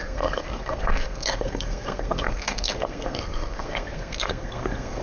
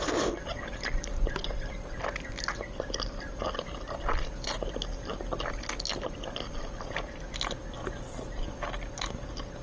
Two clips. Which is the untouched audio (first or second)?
second